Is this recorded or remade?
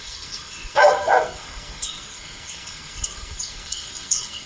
remade